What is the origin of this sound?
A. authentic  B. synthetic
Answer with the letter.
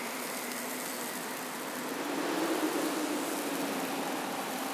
A